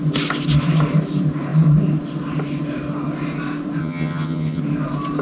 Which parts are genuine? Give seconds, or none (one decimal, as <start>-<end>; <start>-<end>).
0.0-3.8; 4.6-5.2